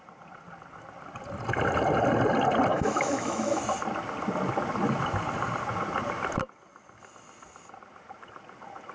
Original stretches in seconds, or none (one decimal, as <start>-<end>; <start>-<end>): 0.0-2.7; 3.6-8.9